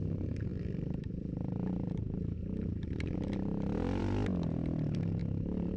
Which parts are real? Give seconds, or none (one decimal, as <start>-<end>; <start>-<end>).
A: 0.0-5.8